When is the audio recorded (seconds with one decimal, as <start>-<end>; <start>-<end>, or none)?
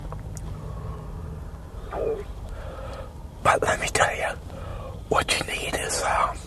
0.0-1.7; 3.2-4.2